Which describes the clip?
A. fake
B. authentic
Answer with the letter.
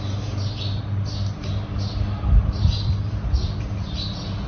B